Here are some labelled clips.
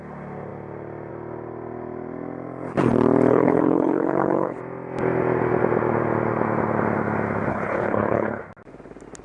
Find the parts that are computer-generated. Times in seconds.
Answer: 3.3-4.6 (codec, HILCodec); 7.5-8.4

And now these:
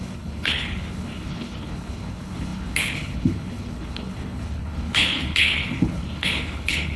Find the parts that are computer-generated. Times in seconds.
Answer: 0.0-7.0 (codec, HILCodec)

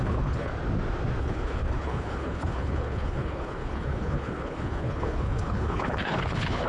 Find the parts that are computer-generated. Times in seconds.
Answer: 0.0-0.5 (codec, HILCodec); 1.2-6.7